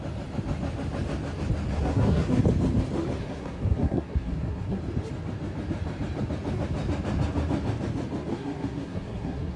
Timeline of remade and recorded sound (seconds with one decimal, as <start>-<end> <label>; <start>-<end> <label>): 0.0-1.7 recorded; 1.7-2.4 remade; 2.4-3.2 recorded; 3.2-4.8 remade; 4.8-8.3 recorded; 8.3-9.6 remade